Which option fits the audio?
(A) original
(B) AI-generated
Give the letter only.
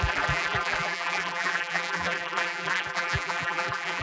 B